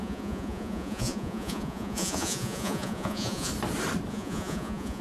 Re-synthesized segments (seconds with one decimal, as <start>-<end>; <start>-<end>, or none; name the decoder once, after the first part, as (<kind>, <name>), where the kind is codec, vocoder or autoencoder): 0.0-3.5 (vocoder, Vocos); 4.1-5.0